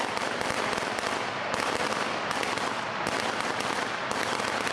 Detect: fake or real real